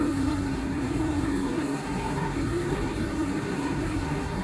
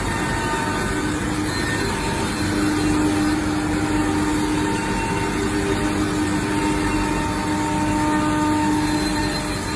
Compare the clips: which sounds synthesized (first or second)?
first